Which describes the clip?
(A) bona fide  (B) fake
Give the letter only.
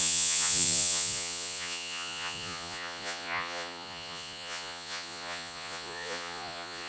B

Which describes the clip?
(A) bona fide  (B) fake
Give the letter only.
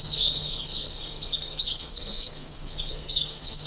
B